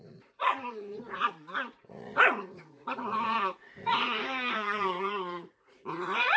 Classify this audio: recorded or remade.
remade